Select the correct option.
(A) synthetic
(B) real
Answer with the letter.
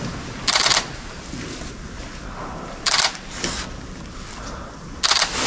B